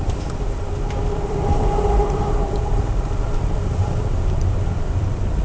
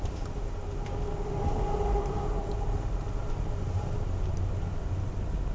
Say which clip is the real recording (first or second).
second